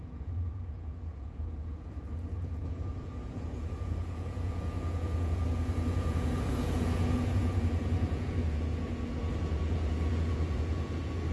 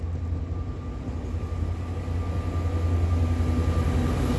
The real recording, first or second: second